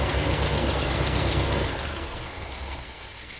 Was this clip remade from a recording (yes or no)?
yes